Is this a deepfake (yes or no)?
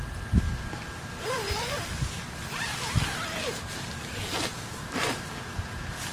no